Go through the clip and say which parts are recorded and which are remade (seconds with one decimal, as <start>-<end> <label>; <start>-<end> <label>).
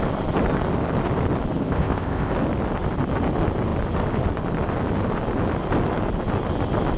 0.0-1.6 recorded; 1.6-2.3 remade; 2.3-7.0 recorded